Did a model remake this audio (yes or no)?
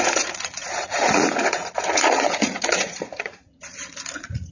yes